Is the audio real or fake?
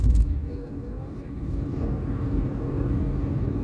fake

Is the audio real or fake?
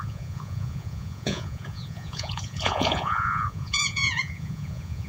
fake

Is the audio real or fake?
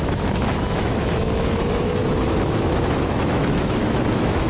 fake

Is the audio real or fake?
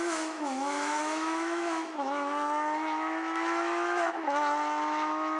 fake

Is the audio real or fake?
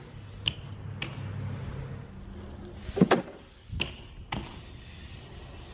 real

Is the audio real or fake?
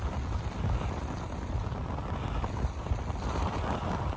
real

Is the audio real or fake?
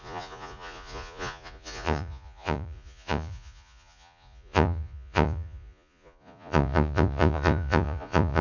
fake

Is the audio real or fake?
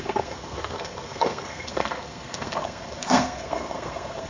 fake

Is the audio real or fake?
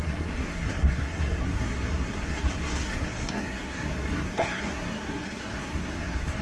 fake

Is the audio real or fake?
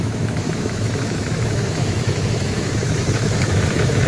fake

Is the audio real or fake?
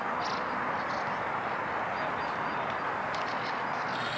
real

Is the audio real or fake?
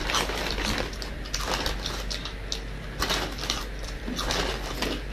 real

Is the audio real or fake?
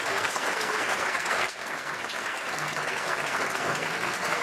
fake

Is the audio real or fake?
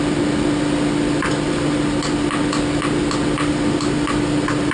real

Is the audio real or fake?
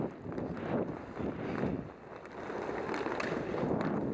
real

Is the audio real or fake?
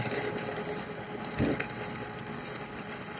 real